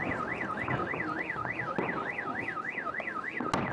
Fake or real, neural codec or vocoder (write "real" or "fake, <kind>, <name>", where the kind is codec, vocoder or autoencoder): real